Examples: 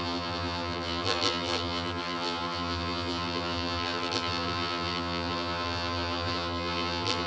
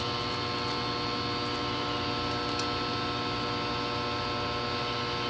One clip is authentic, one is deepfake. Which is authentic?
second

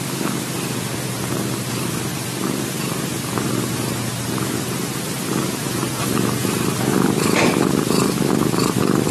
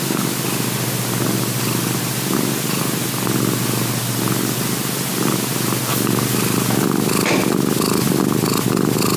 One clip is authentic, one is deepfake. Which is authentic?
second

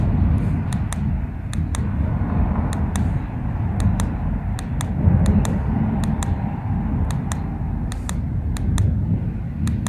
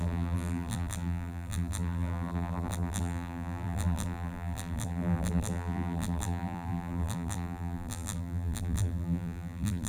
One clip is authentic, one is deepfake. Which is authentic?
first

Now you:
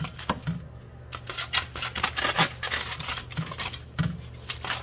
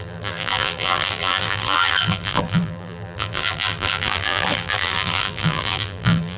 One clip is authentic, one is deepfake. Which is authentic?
first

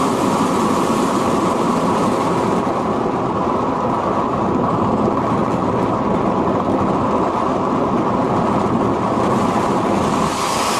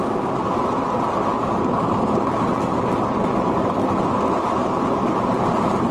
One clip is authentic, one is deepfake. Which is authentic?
second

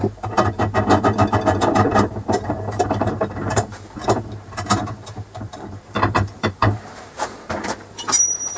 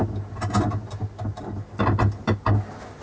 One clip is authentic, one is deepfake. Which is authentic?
second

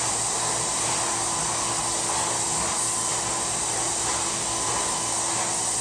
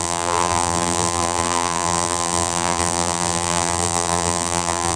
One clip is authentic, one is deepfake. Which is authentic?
first